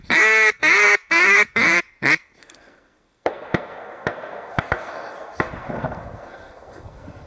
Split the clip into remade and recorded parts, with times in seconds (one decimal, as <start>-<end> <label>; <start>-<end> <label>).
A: 0.0-7.3 remade